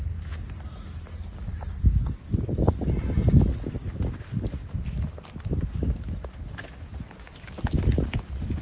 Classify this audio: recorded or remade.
recorded